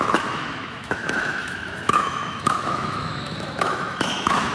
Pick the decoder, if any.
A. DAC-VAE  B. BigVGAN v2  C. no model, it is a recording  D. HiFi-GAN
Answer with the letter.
A